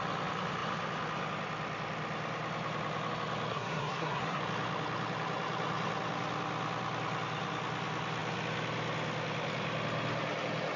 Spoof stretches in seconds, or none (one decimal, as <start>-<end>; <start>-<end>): 3.5-4.4